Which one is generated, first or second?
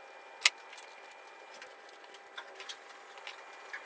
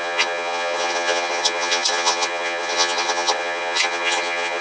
second